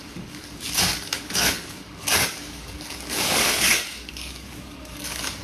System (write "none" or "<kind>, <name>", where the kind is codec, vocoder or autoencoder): codec, DAC